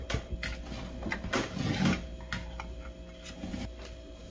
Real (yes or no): yes